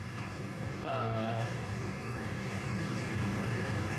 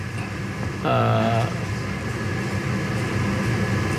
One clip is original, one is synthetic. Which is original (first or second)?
second